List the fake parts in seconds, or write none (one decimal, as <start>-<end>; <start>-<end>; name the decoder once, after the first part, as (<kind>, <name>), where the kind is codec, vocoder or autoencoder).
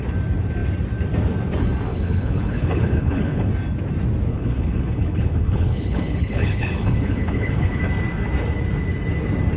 1.9-3.5 (codec, HILCodec); 4.3-7.8